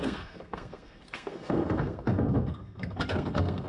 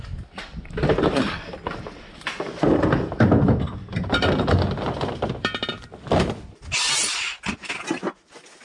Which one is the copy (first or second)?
first